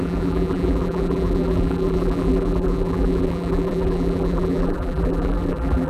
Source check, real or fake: fake